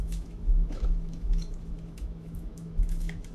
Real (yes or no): no